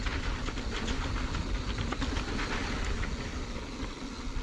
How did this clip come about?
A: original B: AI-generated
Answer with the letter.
A